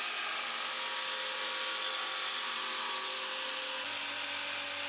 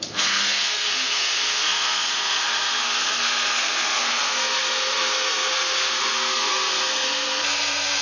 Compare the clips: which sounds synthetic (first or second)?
second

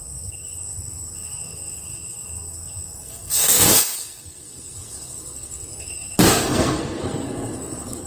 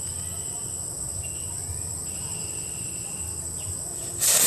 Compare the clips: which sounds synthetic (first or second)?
first